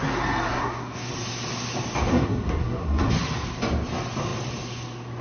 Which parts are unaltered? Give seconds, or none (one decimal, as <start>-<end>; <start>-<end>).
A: 0.0-0.5; 1.1-2.1; 3.1-5.2